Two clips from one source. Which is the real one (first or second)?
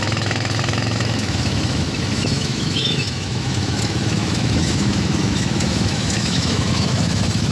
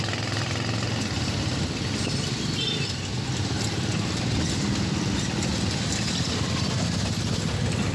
second